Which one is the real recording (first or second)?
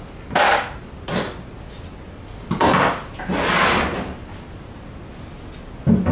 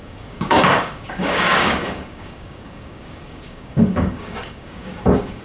first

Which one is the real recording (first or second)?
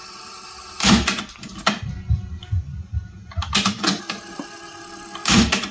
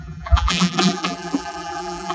first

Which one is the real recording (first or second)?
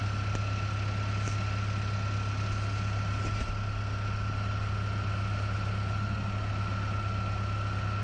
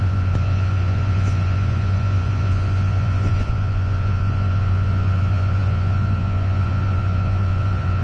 first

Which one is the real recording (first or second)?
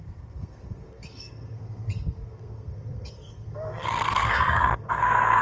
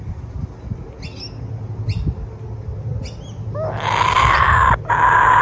second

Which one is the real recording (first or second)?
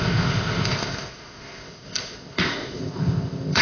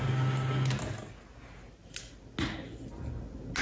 second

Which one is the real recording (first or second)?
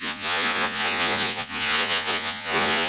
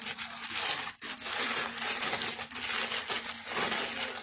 second